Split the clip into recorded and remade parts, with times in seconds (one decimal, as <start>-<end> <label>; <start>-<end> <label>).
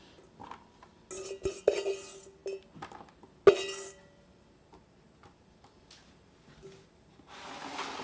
0.0-8.0 recorded